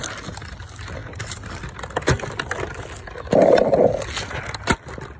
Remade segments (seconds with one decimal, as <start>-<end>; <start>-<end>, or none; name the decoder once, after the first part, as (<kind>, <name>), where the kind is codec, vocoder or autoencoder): none